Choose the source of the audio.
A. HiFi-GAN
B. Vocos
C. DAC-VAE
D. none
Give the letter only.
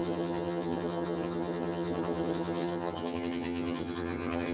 A